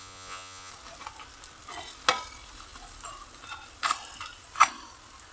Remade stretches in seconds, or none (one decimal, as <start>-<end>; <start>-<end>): 0.0-0.7